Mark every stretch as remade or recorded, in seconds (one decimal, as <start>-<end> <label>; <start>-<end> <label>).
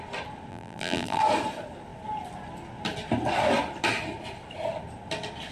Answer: 0.0-0.5 recorded; 0.5-1.2 remade; 1.2-5.5 recorded